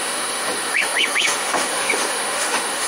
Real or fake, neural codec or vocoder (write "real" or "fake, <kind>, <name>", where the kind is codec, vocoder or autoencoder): fake, autoencoder, DAC-VAE